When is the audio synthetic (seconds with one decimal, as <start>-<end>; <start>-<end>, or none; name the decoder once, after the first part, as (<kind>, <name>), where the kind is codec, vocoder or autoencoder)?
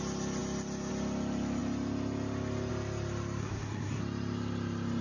3.4-4.0 (codec, SNAC)